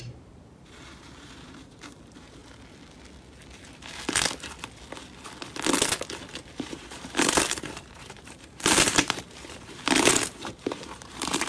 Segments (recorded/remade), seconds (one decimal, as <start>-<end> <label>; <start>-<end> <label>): 0.0-2.4 remade; 2.4-6.5 recorded; 6.5-11.5 remade